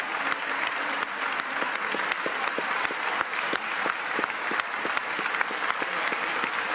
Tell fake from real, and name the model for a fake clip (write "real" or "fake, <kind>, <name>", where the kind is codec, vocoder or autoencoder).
real